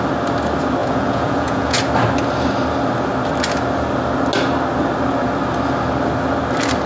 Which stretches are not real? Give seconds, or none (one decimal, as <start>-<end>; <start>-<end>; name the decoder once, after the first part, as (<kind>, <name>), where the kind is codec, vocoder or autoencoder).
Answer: 0.8-1.8 (vocoder, Vocos)